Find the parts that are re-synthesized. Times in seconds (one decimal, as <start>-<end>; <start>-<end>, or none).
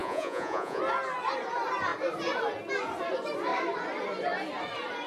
0.0-0.8